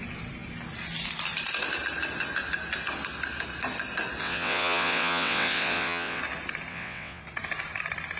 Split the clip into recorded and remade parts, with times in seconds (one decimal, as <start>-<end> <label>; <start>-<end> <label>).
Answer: 0.0-4.2 recorded; 4.2-6.2 remade; 6.2-6.7 recorded; 6.7-7.2 remade; 7.2-8.2 recorded